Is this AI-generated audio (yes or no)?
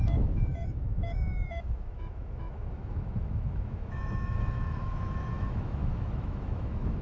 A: yes